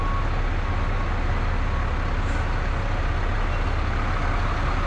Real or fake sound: real